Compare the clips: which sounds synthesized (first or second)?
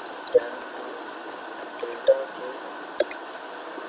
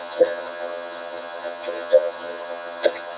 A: second